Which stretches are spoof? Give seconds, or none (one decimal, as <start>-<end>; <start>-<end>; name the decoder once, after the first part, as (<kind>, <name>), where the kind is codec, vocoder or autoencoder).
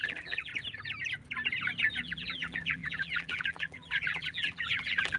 0.0-0.5 (vocoder, BigVGAN v2); 2.0-5.2